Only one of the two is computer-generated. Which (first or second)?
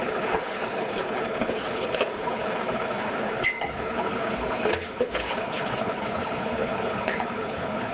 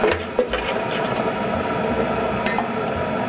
first